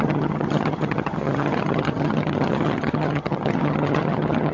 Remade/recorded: remade